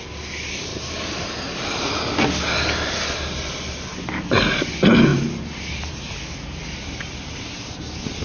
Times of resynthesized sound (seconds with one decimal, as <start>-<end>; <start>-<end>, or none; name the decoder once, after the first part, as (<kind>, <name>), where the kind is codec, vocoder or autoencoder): 0.7-1.3 (vocoder, BigVGAN v2); 5.1-6.1

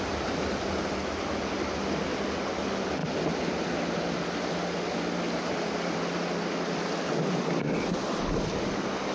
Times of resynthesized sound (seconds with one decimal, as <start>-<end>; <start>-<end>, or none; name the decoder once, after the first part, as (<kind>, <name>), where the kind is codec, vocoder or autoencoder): none

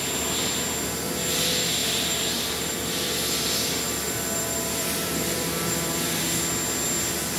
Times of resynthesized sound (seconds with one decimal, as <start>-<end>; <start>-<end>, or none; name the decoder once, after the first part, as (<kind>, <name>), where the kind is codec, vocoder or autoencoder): 1.8-6.2 (vocoder, BigVGAN v2)

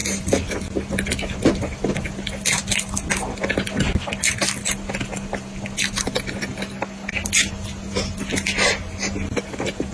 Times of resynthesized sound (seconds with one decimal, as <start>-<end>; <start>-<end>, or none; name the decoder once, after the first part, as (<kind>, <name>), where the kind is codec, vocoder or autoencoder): none

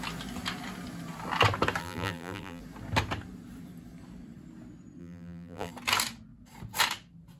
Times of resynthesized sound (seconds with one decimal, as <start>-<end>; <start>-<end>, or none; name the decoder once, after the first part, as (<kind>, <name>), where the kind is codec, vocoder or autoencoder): 1.8-2.6 (vocoder, BigVGAN v2); 5.0-5.7

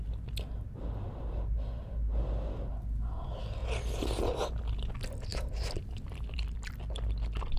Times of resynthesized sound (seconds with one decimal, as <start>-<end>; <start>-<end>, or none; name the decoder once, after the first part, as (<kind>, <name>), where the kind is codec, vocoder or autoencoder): 5.3-6.7 (vocoder, BigVGAN v2)

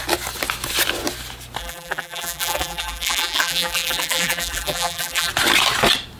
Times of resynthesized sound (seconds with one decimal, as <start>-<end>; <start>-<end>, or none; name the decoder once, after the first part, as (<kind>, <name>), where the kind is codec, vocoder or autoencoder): 1.6-5.3 (vocoder, BigVGAN v2)

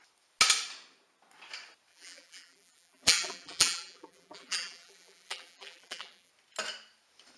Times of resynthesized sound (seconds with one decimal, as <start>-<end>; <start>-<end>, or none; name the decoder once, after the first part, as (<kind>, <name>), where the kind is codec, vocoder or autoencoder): 1.9-6.3 (vocoder, BigVGAN v2)